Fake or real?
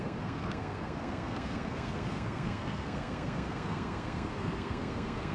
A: fake